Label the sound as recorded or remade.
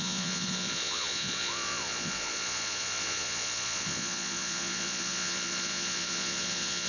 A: remade